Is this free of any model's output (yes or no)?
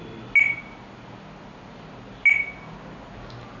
yes